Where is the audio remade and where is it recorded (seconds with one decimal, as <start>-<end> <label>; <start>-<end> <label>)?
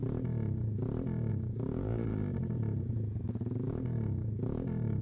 0.0-1.3 recorded; 1.3-2.1 remade; 2.1-3.7 recorded; 3.7-5.0 remade